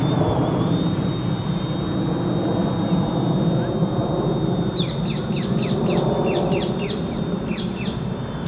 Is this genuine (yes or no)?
yes